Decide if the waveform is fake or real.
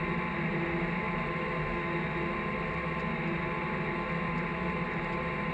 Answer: real